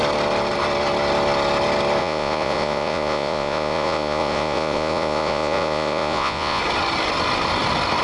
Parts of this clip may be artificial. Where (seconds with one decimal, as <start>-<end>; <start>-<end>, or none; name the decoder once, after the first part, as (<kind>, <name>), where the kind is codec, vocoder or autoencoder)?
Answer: 2.0-6.6 (vocoder, Vocos)